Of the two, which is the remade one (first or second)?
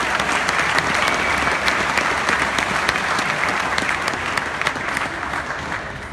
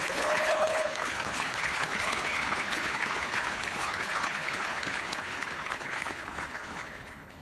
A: second